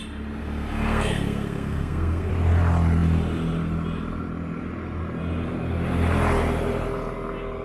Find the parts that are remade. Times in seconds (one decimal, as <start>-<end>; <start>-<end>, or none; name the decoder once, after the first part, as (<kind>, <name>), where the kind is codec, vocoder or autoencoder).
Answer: 0.4-2.3 (codec, SNAC)